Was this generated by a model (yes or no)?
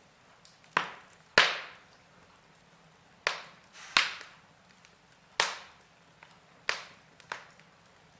no